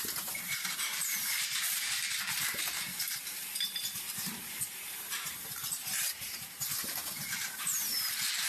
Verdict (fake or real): fake